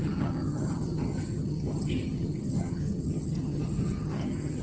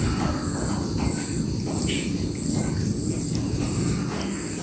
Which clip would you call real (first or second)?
second